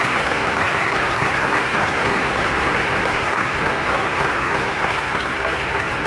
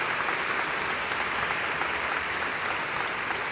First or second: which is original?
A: second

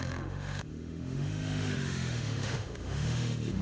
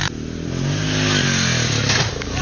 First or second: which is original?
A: second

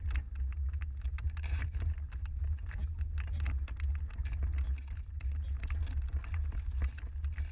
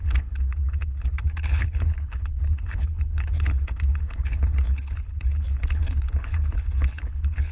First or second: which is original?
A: first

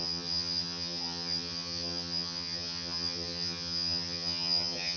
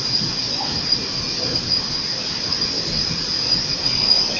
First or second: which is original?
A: second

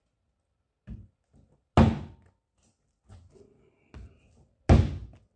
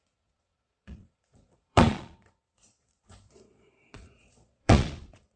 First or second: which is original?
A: first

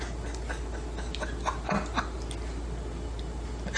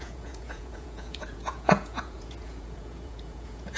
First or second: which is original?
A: first